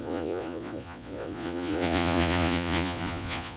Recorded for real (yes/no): no